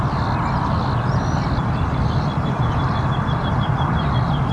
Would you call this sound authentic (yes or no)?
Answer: no